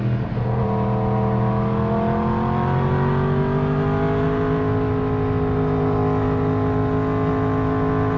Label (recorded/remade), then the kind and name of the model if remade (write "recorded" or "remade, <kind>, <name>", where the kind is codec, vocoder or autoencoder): recorded